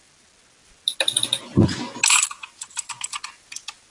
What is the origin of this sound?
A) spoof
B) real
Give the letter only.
B